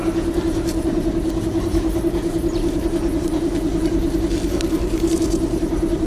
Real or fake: fake